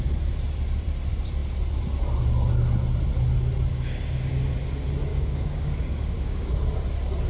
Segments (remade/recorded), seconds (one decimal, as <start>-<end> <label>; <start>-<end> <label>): 0.0-3.7 recorded; 3.7-4.3 remade; 4.3-5.1 recorded; 5.1-6.5 remade; 6.5-7.3 recorded